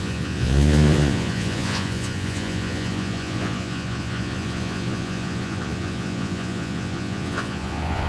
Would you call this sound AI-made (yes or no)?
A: yes